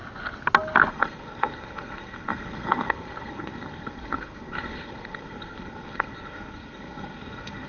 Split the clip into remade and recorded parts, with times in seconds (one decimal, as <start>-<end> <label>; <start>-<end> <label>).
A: 0.0-0.9 recorded; 0.9-7.7 remade